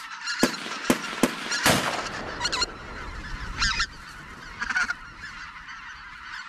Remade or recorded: recorded